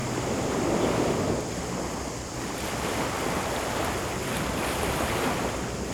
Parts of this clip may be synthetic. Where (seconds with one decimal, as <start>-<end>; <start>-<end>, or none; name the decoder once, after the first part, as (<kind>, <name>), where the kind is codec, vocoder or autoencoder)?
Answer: none